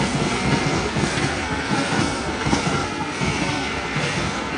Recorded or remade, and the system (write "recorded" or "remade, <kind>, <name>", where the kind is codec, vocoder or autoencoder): remade, codec, SNAC